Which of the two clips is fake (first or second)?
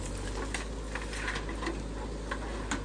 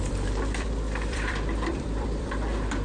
second